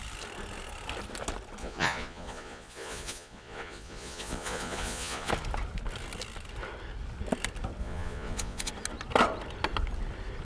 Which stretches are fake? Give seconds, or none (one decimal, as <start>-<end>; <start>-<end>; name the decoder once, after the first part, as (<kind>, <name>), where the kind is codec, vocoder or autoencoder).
1.6-5.3 (vocoder, Vocos); 7.8-8.7